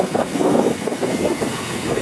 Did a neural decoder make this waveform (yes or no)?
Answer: yes